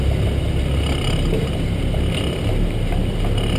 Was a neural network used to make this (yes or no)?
no